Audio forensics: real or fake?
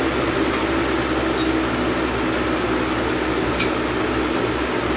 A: real